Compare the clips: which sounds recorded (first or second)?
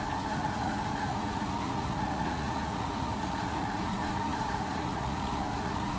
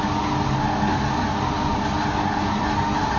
second